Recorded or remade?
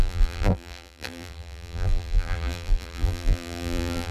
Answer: remade